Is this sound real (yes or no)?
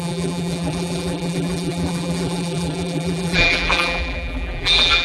no